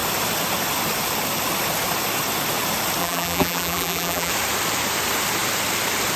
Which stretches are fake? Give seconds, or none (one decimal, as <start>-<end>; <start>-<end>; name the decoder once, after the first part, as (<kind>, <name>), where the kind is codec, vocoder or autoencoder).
3.0-4.3 (vocoder, BigVGAN v2)